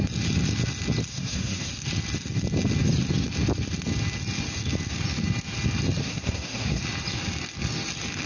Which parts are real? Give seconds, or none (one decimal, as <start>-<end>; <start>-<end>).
0.0-1.1; 1.7-6.0; 6.8-8.3